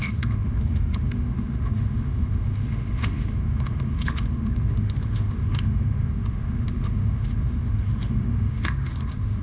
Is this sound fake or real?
fake